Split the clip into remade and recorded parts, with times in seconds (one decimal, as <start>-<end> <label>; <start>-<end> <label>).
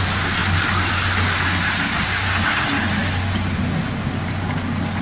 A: 0.0-5.0 recorded